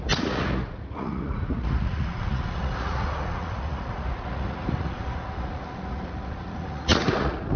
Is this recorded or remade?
remade